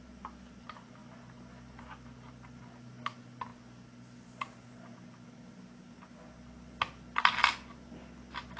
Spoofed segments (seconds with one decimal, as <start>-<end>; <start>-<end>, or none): none